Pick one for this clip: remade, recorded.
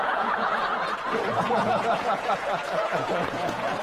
remade